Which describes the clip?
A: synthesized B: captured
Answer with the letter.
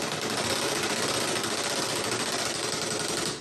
B